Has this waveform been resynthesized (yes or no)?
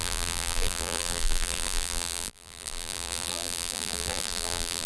yes